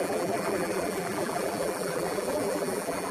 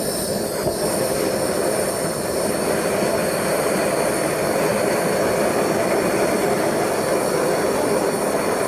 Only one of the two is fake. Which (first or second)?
first